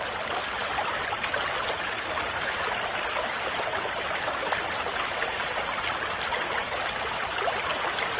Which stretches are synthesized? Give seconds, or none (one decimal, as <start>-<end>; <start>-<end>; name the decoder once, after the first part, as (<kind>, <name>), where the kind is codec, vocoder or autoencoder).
none